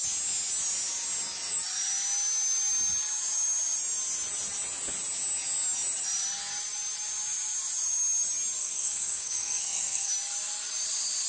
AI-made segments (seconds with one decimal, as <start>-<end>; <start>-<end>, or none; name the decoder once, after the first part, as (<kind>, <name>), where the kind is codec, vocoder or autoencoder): 8.6-10.1 (codec, SNAC)